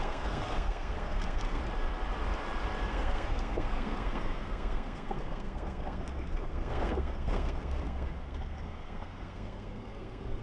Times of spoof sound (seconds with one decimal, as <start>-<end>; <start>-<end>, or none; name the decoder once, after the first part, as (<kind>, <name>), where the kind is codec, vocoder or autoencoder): 0.0-1.6 (codec, SNAC); 2.9-10.4

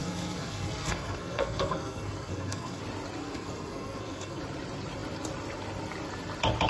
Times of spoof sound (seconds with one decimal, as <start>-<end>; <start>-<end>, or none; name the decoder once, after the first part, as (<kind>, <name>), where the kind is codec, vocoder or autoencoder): 0.0-2.8 (codec, SNAC); 3.2-4.4

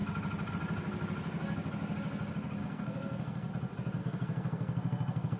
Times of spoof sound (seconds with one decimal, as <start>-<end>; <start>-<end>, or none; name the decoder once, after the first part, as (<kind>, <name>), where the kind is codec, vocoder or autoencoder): 2.6-3.5 (codec, SNAC); 4.0-5.4

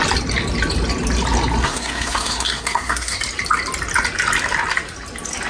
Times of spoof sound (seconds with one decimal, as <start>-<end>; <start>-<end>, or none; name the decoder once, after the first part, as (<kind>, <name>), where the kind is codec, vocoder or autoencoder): 1.6-3.2 (codec, SNAC)

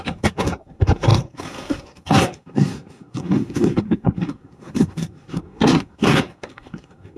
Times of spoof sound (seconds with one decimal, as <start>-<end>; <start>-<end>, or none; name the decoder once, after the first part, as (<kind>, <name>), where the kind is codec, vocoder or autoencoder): 0.0-7.2 (codec, SNAC)

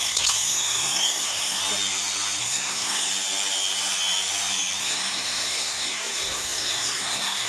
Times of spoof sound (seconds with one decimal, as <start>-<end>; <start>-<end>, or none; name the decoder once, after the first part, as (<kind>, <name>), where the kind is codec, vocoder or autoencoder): 0.0-1.6 (codec, SNAC); 2.4-3.1; 4.8-7.5

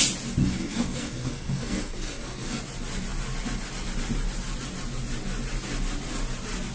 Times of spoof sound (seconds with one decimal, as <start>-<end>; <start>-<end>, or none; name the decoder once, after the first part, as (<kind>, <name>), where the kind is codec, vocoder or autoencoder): 0.4-2.6 (codec, SNAC)

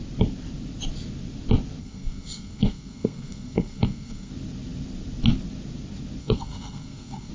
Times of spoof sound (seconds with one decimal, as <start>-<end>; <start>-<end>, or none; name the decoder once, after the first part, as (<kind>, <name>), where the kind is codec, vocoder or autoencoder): 1.8-4.3 (codec, SNAC); 6.2-7.3